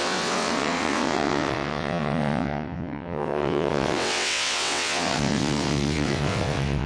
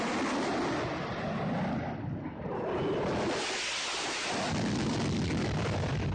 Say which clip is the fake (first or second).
first